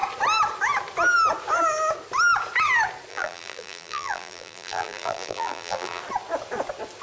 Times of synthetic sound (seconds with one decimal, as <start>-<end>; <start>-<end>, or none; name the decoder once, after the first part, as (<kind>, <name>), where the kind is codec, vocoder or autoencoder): 3.1-6.0 (vocoder, BigVGAN v2)